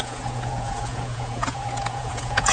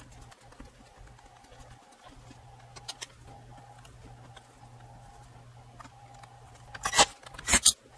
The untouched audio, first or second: second